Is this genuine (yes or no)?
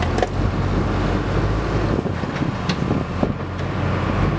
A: yes